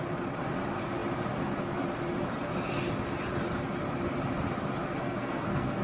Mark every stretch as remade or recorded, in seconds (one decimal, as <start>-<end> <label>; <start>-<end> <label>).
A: 0.0-4.8 recorded; 4.8-5.8 remade